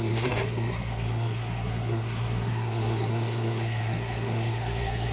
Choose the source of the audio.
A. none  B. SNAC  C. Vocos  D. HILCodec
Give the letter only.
B